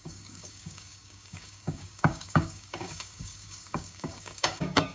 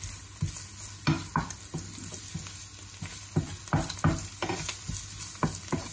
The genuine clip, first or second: second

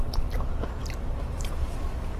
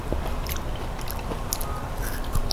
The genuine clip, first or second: second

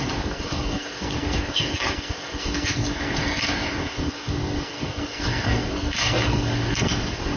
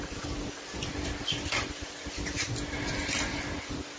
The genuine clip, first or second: second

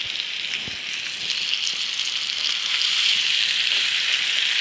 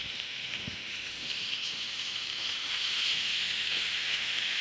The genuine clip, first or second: first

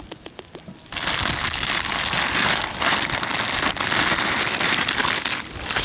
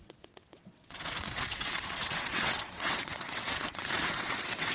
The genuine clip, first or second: first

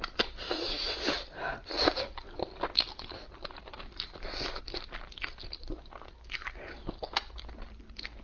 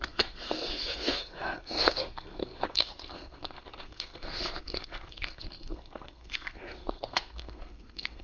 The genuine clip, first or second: first